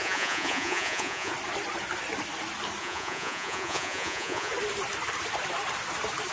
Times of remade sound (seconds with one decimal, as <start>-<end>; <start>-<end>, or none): 0.0-1.3; 2.8-4.5